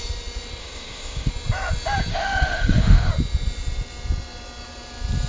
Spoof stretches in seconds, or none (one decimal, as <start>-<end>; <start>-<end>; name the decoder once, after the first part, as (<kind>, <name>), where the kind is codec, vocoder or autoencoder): 0.6-1.3 (autoencoder, DAC-VAE); 2.1-3.1